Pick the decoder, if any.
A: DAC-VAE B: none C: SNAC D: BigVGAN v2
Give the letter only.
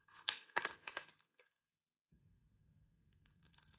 C